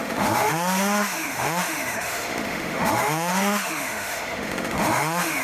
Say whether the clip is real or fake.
fake